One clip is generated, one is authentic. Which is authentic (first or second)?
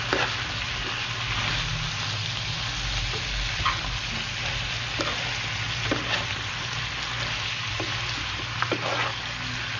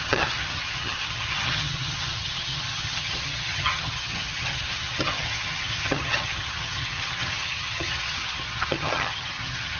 first